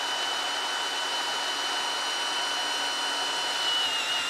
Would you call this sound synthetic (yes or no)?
no